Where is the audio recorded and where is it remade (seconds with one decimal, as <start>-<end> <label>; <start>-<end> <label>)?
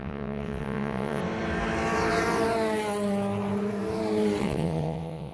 0.0-1.2 remade; 1.2-4.4 recorded; 4.4-5.3 remade